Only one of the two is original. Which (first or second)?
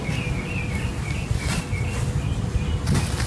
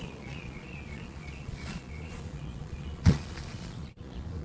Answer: first